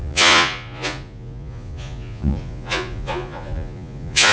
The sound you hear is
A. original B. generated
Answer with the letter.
B